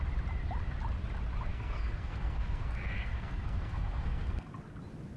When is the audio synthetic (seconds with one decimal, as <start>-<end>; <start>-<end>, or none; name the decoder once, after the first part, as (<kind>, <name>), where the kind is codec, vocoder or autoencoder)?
1.5-4.5 (codec, SNAC)